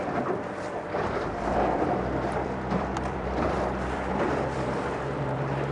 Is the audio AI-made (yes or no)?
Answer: yes